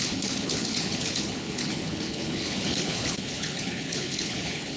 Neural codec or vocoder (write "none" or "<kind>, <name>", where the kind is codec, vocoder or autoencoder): codec, HILCodec